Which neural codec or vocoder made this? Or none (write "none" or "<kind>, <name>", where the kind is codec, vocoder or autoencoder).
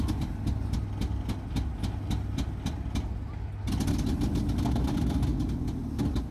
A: none